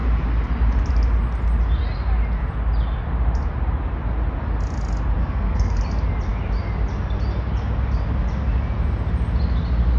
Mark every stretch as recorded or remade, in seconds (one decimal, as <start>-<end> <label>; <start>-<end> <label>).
0.0-5.2 recorded; 5.2-5.8 remade; 5.8-10.0 recorded